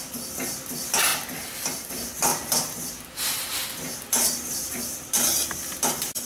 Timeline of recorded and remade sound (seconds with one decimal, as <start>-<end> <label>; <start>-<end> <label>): 0.0-6.3 recorded